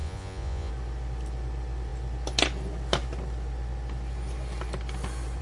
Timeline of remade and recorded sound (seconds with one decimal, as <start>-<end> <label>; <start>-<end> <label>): 0.0-0.7 remade; 0.7-5.4 recorded